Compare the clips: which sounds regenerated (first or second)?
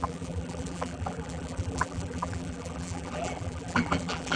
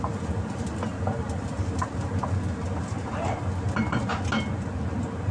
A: first